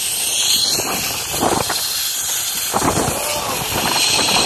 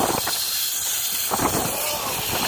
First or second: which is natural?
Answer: first